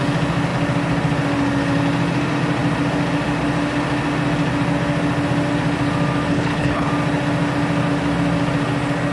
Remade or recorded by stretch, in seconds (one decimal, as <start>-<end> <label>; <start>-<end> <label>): 0.0-6.3 recorded; 6.3-6.9 remade; 6.9-9.1 recorded